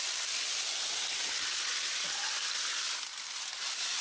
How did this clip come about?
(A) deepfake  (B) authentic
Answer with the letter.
B